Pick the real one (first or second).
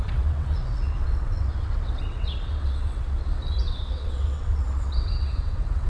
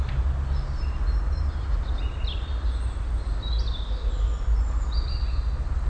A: second